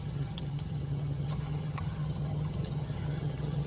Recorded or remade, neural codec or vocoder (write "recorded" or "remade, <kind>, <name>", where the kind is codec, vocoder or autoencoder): remade, vocoder, HiFi-GAN